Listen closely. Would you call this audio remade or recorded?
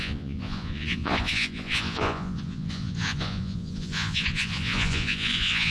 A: remade